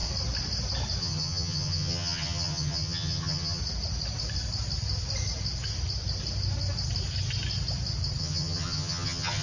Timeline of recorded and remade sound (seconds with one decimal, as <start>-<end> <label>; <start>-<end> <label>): 0.0-1.0 recorded; 1.0-3.6 remade; 3.6-8.2 recorded; 8.2-9.4 remade